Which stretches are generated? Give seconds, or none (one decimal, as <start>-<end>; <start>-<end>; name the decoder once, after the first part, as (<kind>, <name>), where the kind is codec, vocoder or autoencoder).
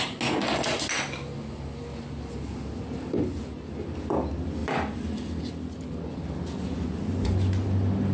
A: 4.6-5.4 (vocoder, BigVGAN v2)